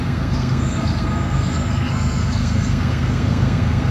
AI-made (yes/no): yes